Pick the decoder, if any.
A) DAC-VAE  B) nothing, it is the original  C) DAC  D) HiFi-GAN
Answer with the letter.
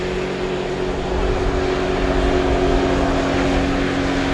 B